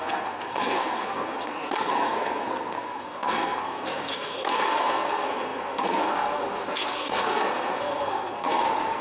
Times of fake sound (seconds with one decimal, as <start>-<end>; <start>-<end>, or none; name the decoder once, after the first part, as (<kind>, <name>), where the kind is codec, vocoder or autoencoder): 0.0-9.0 (codec, SNAC)